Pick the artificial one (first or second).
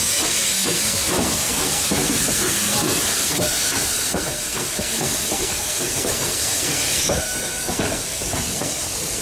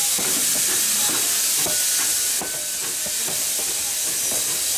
first